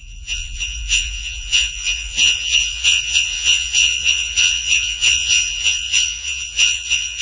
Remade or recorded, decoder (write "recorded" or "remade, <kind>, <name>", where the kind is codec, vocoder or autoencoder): remade, vocoder, Vocos